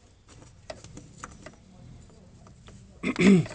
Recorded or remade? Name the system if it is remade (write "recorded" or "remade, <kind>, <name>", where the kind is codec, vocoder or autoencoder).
recorded